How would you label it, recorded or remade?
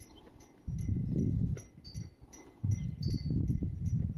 recorded